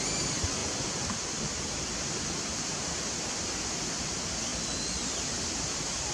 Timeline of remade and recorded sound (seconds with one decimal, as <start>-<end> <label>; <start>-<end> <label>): 0.0-6.1 recorded